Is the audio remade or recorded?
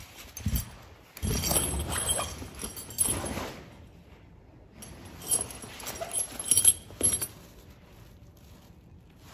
recorded